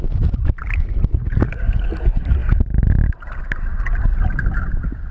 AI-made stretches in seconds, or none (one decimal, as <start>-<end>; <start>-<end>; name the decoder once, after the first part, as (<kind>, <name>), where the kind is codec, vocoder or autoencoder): none